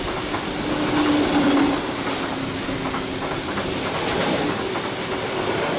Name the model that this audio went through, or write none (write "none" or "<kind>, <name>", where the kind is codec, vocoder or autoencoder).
none